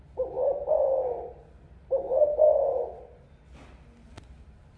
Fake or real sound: real